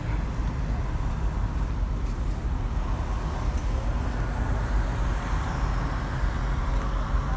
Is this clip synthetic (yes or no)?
no